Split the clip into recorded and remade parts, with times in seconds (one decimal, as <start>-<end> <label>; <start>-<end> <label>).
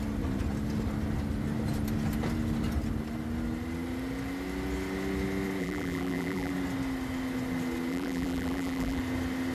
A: 0.0-5.6 recorded; 5.6-6.5 remade; 6.5-7.9 recorded; 7.9-9.0 remade; 9.0-9.5 recorded